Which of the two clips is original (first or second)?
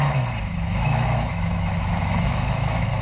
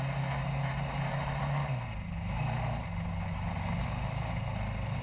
second